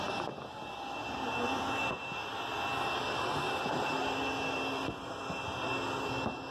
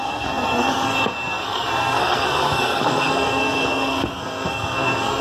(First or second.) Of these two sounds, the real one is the first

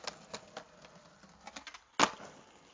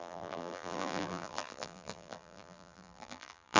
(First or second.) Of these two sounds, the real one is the first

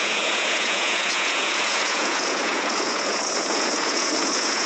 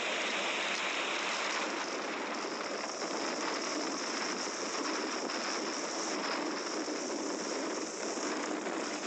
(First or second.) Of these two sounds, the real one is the second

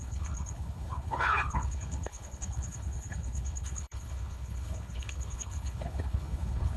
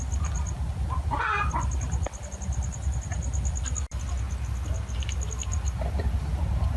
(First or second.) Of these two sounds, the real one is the second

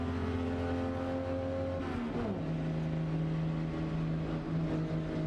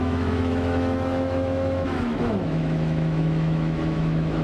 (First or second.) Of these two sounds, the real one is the first